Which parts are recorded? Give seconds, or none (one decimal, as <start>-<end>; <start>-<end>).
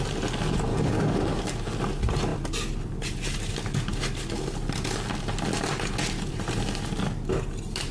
0.0-0.7; 1.4-7.9